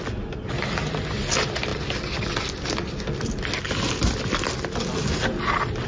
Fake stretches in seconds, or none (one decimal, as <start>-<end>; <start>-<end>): none